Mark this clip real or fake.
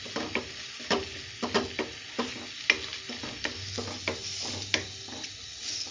real